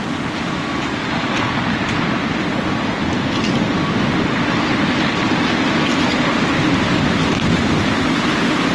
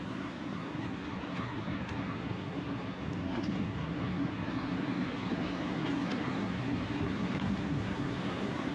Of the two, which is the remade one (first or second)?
second